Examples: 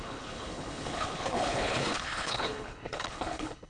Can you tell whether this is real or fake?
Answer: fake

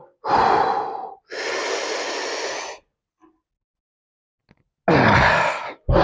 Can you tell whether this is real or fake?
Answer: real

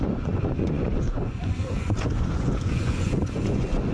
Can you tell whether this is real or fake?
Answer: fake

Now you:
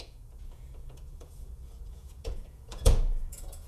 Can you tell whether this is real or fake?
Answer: fake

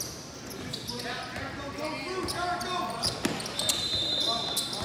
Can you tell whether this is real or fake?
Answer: real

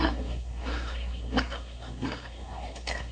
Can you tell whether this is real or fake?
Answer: fake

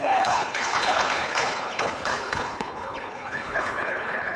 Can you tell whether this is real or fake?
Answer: fake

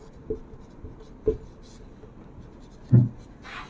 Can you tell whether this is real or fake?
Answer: real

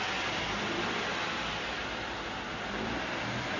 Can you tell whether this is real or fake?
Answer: real